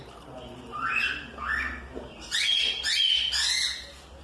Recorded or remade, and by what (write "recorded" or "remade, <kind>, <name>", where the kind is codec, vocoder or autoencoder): recorded